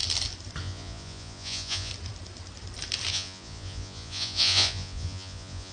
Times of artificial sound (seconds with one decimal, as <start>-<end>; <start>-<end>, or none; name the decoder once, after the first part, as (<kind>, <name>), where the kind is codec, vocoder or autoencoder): 0.6-1.9 (vocoder, Vocos); 3.1-5.7